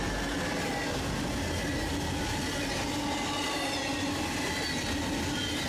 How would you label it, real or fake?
real